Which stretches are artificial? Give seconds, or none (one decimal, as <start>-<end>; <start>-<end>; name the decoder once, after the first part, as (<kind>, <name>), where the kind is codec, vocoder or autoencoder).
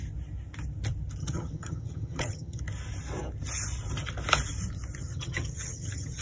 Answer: 1.2-2.6 (vocoder, HiFi-GAN); 5.0-6.2